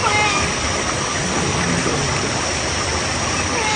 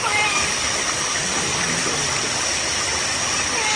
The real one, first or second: first